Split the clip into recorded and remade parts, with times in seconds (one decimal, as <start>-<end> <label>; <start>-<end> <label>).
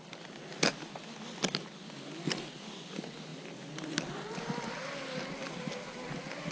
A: 0.0-6.5 recorded